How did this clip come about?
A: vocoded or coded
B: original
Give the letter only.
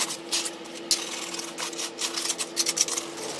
B